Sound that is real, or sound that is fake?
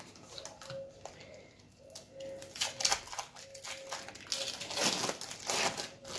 real